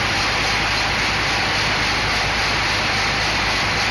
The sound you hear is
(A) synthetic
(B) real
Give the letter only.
B